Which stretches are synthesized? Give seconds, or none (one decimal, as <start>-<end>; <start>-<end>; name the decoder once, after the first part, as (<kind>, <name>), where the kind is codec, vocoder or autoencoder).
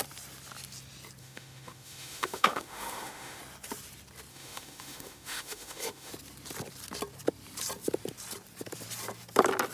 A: 1.2-3.4 (autoencoder, DAC-VAE); 4.3-6.1